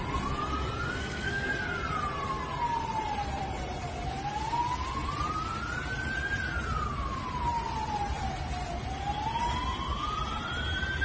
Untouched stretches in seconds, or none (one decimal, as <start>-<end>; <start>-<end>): 0.0-1.0; 1.5-11.0

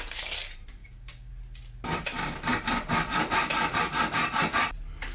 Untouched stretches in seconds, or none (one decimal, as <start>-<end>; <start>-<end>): 0.0-0.8; 1.3-5.1

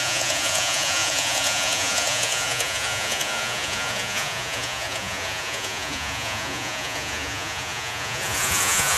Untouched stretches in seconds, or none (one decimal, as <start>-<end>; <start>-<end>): none

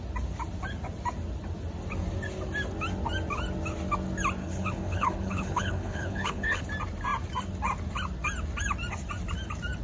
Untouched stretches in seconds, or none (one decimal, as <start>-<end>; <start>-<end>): 0.0-4.4; 6.6-9.8